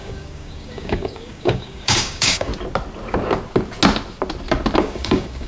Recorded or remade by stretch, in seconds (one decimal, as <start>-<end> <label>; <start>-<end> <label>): 0.0-2.5 remade; 2.5-4.8 recorded; 4.8-5.5 remade